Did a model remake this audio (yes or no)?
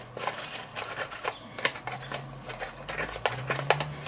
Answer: no